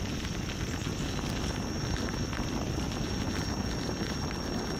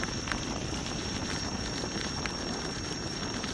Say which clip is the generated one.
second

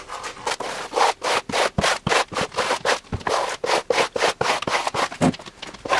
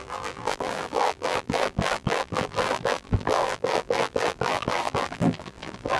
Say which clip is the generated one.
second